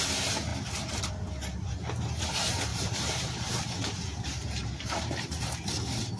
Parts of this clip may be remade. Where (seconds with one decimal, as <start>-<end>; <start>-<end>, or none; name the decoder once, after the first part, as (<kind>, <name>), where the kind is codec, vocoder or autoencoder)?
2.7-5.5 (vocoder, BigVGAN v2)